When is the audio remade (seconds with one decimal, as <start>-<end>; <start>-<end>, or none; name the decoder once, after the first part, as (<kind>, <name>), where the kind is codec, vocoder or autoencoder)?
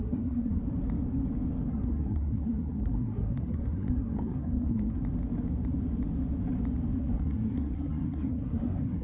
0.0-0.6 (codec, SNAC); 1.7-5.0; 7.0-9.0